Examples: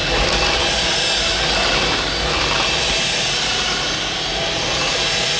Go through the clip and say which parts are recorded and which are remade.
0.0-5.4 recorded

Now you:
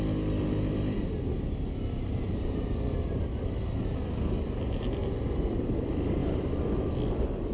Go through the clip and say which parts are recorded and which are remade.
0.0-7.5 recorded

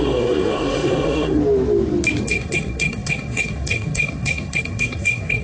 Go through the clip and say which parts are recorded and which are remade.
0.0-1.4 remade; 1.4-2.2 recorded; 2.2-5.4 remade